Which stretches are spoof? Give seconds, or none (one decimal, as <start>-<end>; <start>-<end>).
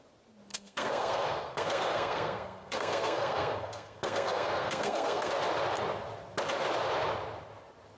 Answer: 0.5-5.3